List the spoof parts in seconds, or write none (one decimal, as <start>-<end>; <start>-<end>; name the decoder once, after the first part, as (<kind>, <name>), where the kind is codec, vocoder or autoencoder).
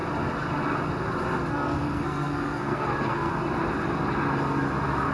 1.5-3.3 (codec, SNAC)